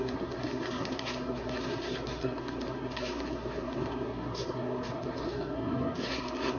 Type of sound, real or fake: fake